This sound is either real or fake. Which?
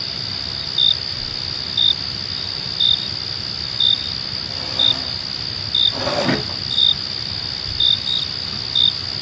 real